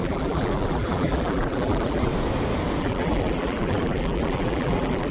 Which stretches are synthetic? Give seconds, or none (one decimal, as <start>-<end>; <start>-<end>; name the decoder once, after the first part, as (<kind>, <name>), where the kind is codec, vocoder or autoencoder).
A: 0.0-2.1 (vocoder, BigVGAN v2); 2.8-5.1